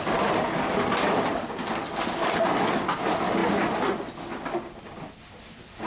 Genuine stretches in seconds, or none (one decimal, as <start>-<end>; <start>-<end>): 0.0-5.9